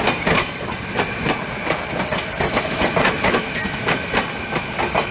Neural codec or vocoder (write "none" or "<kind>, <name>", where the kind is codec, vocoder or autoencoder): none